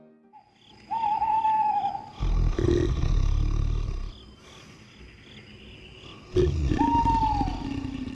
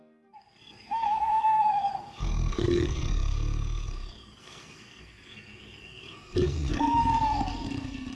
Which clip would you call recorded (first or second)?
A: first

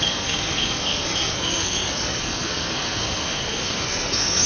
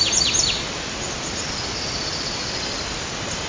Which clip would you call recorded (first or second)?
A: second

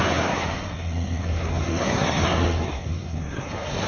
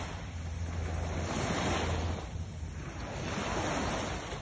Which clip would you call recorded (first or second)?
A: second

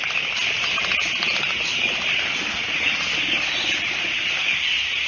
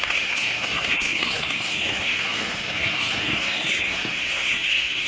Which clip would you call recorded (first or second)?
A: first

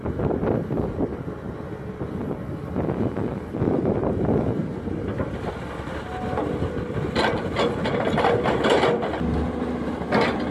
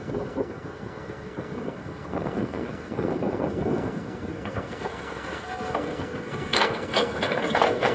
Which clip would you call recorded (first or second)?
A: first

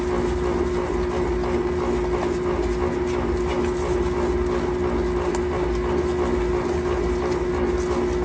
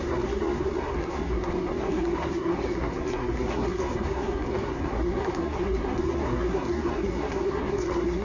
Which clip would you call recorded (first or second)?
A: first